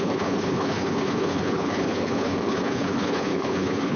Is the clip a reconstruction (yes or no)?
yes